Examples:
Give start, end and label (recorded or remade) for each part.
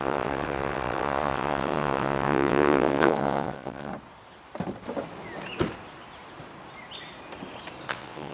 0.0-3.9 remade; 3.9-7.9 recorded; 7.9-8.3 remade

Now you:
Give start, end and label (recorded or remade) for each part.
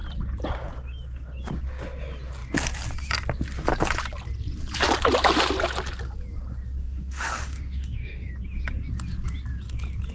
0.0-6.8 recorded; 6.8-8.3 remade; 8.3-10.1 recorded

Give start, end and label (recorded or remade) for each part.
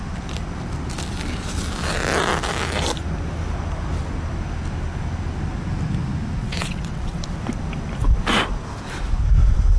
0.0-6.4 recorded; 6.4-7.2 remade; 7.2-9.8 recorded